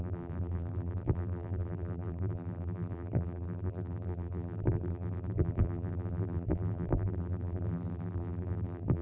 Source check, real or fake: fake